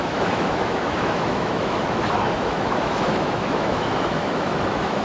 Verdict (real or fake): fake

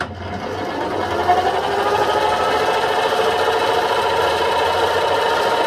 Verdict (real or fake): real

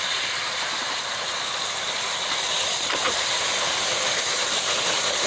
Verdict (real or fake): fake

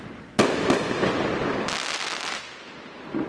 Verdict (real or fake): real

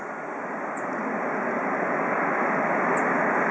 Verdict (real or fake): real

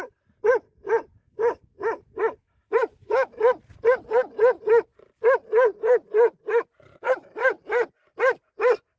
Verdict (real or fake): real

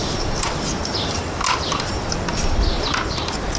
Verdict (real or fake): fake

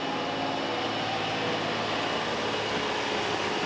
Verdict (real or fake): real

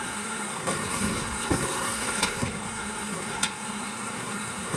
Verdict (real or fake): fake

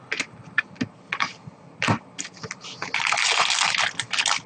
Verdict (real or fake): real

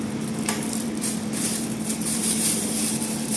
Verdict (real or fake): fake